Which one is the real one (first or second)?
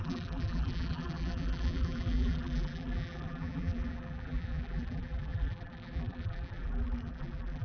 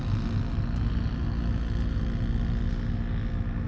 second